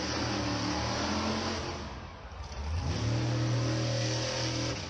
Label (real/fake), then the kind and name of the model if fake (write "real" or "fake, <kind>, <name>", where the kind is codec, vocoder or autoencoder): real